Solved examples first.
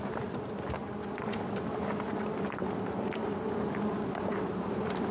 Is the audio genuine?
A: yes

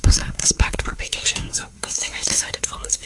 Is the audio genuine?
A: no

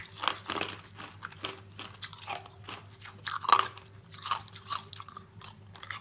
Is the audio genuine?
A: yes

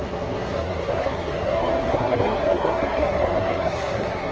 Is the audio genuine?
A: no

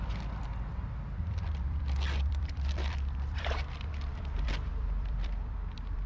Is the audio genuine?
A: no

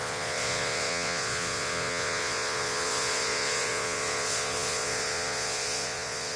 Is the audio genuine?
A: no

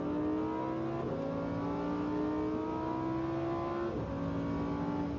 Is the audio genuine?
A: yes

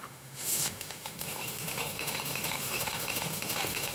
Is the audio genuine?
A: no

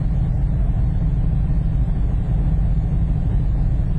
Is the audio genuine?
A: yes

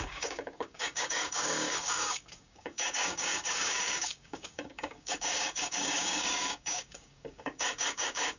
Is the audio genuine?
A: no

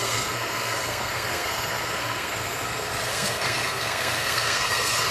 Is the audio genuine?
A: no